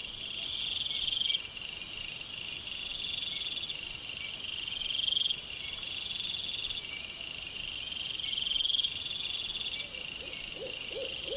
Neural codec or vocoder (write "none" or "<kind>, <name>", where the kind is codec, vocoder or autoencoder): none